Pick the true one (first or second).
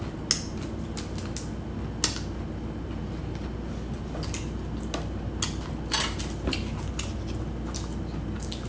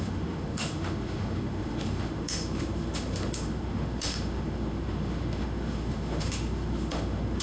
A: first